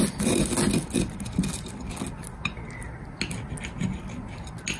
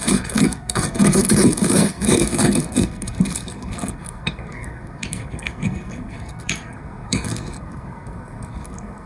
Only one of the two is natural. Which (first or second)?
first